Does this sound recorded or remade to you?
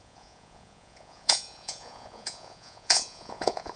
remade